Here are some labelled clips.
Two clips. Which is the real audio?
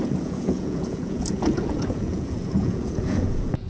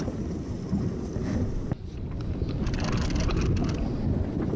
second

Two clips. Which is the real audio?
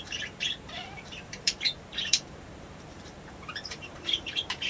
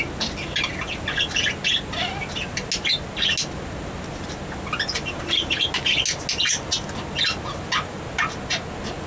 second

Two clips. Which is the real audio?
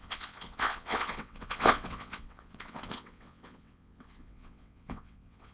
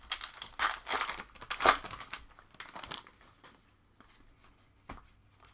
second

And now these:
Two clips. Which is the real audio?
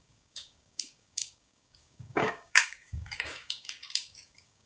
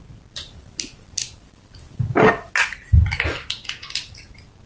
second